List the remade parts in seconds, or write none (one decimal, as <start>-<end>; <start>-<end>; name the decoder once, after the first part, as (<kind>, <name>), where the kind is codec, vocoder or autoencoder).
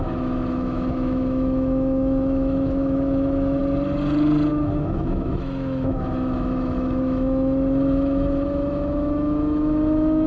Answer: 0.0-3.6 (autoencoder, DAC-VAE); 4.5-10.3